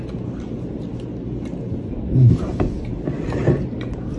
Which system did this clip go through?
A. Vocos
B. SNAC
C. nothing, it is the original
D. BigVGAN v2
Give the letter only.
C